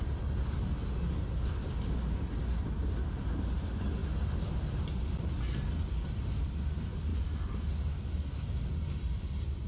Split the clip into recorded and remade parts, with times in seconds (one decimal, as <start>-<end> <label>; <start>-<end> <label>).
0.0-9.7 recorded